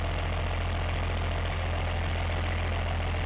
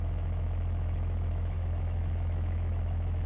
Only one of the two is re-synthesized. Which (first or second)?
second